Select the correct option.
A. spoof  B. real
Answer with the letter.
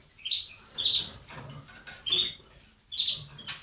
B